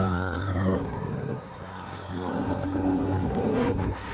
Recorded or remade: remade